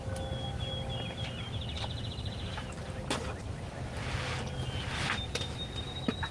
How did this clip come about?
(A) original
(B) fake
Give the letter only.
A